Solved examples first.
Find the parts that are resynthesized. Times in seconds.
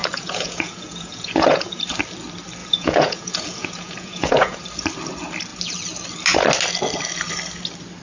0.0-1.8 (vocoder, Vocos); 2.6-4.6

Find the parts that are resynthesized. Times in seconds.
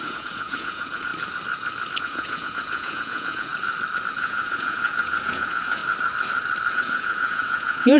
0.0-1.1 (vocoder, Vocos); 2.0-3.5; 4.1-5.8; 6.7-8.0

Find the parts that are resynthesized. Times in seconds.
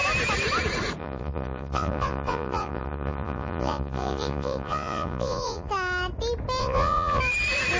1.0-5.7 (vocoder, Vocos); 6.6-7.2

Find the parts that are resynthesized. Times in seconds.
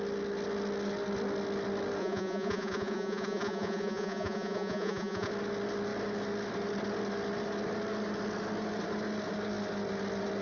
2.0-5.3 (vocoder, Vocos)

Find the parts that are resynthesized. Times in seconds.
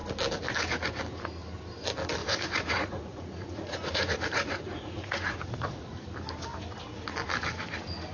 2.2-5.8 (vocoder, Vocos)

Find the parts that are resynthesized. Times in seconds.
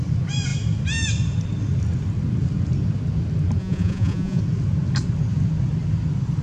3.6-4.4 (vocoder, Vocos)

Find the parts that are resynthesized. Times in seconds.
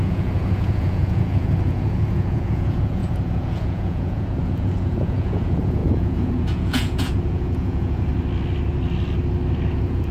0.0-8.1 (vocoder, Vocos); 9.7-10.1